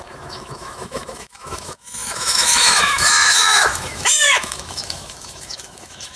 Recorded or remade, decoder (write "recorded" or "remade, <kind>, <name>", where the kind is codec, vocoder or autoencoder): remade, autoencoder, DAC-VAE